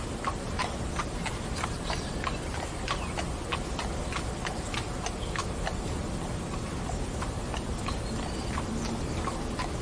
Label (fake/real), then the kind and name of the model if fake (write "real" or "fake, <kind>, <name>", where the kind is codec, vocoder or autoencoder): real